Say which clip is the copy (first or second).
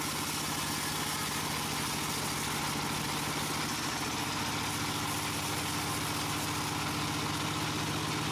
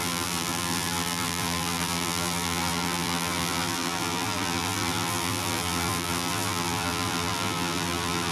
second